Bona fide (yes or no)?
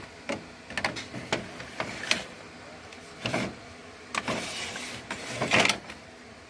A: yes